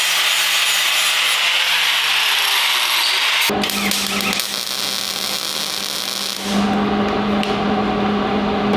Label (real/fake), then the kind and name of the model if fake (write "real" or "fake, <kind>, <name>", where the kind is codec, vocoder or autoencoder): real